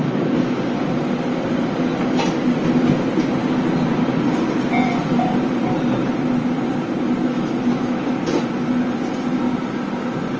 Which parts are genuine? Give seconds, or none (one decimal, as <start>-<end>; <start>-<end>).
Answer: 0.0-7.2; 8.0-10.4